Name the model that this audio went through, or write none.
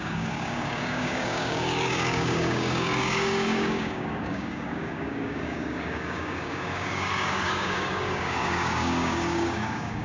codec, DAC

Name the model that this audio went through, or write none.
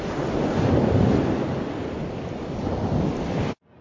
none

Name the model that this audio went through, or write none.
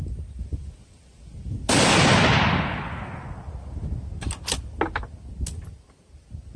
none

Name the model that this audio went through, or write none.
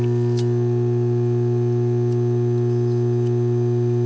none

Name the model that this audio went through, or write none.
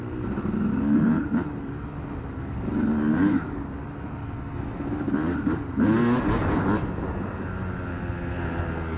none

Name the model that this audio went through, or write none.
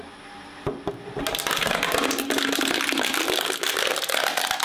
none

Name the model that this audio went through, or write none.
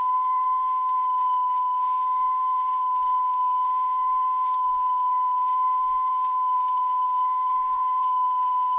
codec, DAC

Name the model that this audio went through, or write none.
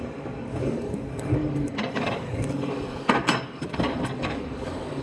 codec, DAC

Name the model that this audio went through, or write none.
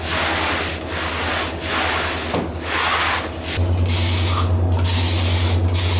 none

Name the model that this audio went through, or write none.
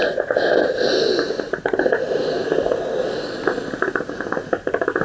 none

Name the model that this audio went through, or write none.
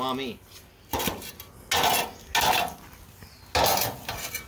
none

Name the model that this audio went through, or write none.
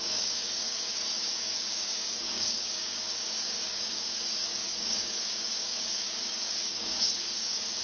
codec, DAC